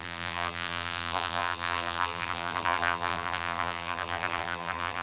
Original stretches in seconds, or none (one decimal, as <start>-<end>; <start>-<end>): none